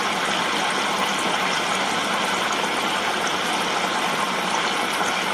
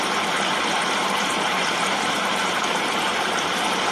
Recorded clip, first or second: first